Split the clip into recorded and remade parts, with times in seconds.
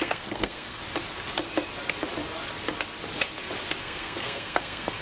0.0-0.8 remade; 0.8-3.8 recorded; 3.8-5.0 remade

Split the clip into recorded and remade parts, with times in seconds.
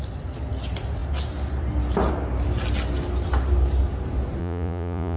0.0-4.4 recorded; 4.4-5.2 remade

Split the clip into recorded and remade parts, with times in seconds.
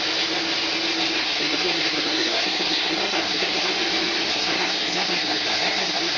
0.0-1.2 recorded; 1.2-3.7 remade; 3.7-4.3 recorded; 4.3-6.2 remade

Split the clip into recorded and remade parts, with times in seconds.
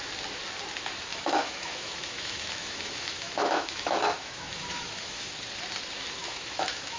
0.0-1.1 recorded; 1.1-5.3 remade; 5.3-6.2 recorded; 6.2-7.0 remade